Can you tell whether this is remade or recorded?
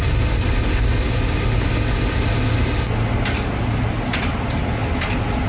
recorded